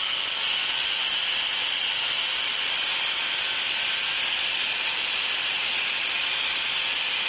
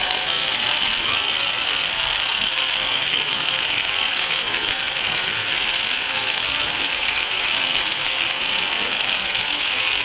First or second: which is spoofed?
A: second